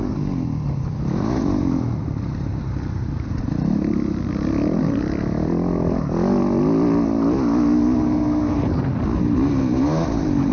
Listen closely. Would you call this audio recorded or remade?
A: recorded